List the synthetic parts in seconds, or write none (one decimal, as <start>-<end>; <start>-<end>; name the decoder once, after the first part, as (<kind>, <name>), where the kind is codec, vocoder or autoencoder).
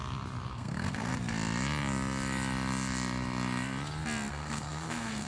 0.5-1.1 (codec, SNAC); 4.3-5.3